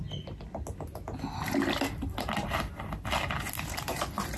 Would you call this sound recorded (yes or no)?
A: yes